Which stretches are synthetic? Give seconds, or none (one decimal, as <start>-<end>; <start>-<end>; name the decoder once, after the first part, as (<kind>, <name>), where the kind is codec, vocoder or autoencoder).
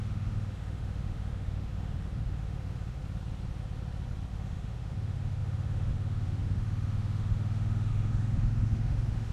0.0-3.0 (autoencoder, DAC-VAE); 4.3-9.3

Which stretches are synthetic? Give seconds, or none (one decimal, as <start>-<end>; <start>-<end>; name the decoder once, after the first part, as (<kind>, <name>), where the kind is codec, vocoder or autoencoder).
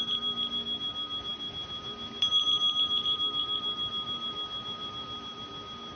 0.0-6.0 (vocoder, BigVGAN v2)